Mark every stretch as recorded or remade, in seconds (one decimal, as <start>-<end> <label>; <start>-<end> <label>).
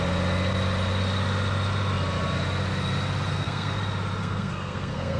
0.0-3.3 recorded; 3.3-3.8 remade; 3.8-4.2 recorded; 4.2-5.2 remade